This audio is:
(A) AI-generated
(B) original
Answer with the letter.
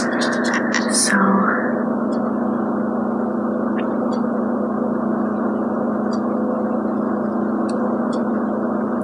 B